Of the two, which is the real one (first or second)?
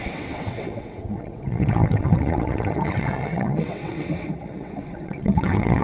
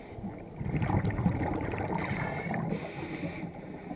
second